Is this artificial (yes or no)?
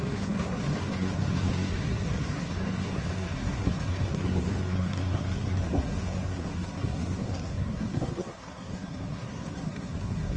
yes